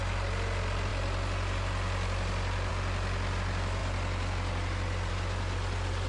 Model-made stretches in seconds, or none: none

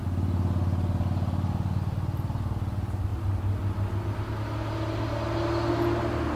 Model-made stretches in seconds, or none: none